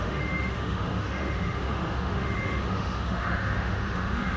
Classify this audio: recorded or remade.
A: remade